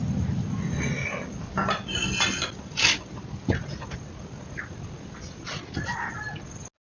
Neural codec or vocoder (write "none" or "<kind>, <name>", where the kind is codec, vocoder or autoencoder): none